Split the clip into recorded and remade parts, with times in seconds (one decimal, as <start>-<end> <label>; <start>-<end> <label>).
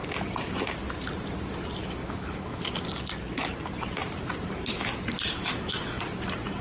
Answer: 0.0-1.8 recorded; 1.8-2.6 remade; 2.6-5.4 recorded; 5.4-6.0 remade; 6.0-6.6 recorded